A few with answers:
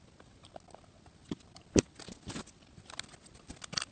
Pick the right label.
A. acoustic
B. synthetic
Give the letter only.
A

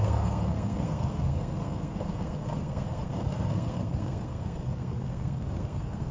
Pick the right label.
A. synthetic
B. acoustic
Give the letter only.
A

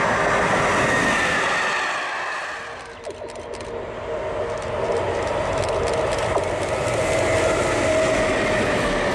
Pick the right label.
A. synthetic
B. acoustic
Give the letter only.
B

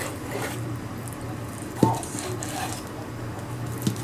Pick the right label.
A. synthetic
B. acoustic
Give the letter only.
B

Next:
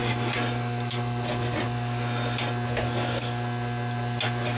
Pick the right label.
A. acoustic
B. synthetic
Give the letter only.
A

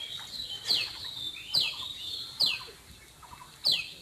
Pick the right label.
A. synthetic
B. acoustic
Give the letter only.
B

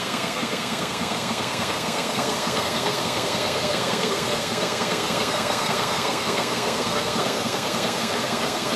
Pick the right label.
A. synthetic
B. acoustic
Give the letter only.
A